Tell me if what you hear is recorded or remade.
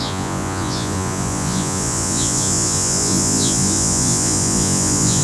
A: remade